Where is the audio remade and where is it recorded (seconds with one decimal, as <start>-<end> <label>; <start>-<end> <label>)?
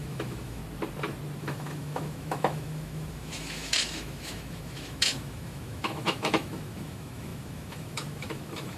0.0-0.6 remade; 0.6-1.4 recorded; 1.4-8.8 remade